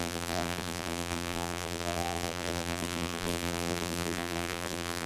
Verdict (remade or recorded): remade